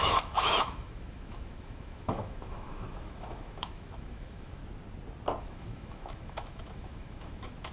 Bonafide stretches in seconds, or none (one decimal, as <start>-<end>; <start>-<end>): 4.6-5.4